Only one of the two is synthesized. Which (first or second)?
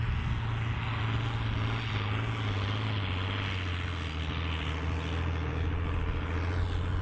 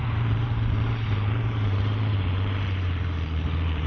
second